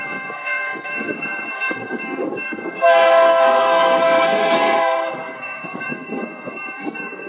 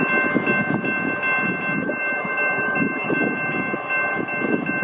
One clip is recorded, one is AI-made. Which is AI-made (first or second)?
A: first